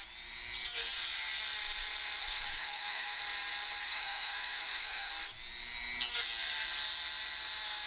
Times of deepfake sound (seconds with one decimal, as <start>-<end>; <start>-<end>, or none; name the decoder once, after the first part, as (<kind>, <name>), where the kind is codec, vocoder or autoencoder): 2.2-3.2 (codec, SNAC); 3.8-5.1